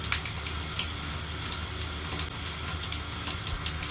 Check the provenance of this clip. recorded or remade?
recorded